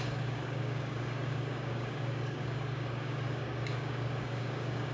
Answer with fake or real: fake